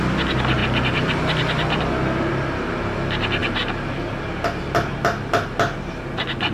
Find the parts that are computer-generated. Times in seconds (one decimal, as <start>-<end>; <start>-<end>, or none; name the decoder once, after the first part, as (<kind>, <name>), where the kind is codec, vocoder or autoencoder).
none